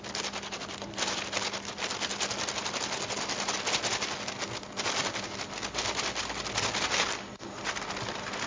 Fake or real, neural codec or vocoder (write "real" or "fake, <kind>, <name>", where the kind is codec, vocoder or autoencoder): real